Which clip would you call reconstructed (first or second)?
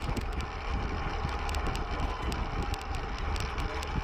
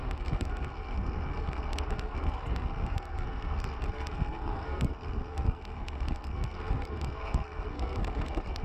second